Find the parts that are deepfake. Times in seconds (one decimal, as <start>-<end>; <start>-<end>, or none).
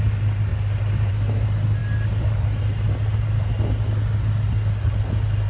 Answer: none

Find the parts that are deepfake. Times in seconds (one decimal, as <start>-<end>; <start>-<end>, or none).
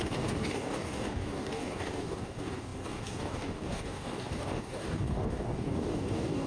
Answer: 0.0-6.5